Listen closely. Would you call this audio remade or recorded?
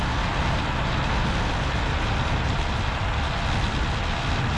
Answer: recorded